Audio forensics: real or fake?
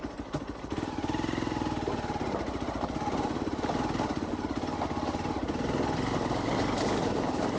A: real